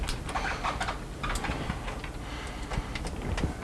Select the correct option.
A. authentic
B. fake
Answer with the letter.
A